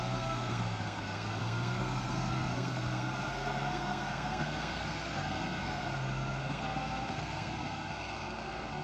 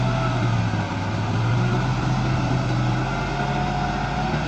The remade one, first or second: first